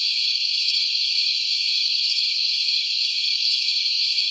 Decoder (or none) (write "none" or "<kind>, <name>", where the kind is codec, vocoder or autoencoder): autoencoder, DAC-VAE